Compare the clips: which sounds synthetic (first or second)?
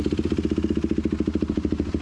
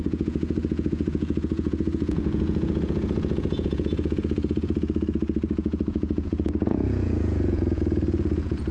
second